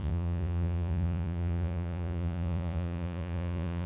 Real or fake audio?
fake